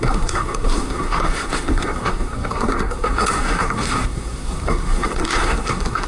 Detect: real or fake fake